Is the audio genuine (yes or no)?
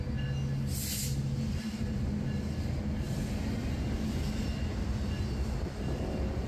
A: yes